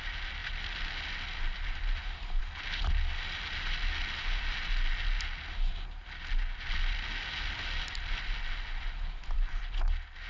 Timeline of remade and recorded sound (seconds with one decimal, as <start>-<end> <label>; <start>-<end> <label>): 0.0-10.3 recorded